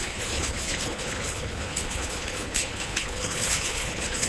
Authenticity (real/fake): fake